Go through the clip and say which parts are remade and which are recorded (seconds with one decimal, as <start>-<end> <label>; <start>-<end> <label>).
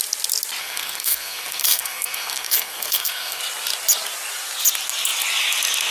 0.0-0.6 recorded; 0.6-3.4 remade; 3.4-5.9 recorded